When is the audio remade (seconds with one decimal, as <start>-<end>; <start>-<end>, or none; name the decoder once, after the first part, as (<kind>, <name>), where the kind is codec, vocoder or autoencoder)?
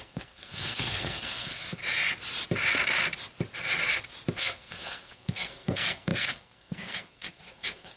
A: 0.0-1.8 (codec, SNAC); 4.4-8.0